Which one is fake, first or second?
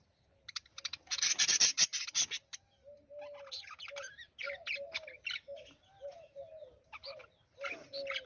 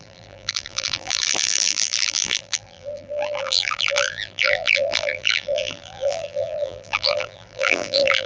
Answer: second